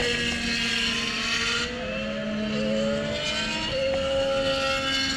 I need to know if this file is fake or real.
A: real